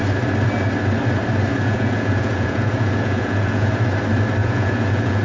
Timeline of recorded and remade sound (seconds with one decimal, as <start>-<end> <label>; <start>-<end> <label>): 0.0-1.5 recorded; 1.5-3.8 remade; 3.8-4.4 recorded; 4.4-5.2 remade